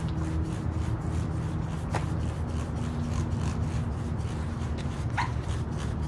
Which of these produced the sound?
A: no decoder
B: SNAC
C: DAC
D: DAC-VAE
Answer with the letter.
A